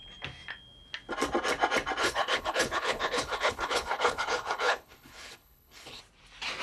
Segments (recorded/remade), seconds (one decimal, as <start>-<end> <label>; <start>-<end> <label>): 0.0-2.0 recorded; 2.0-6.0 remade; 6.0-6.6 recorded